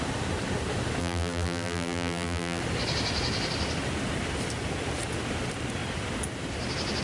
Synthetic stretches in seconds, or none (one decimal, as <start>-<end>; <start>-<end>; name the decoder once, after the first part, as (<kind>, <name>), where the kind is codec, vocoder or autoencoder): 1.0-2.6 (vocoder, BigVGAN v2)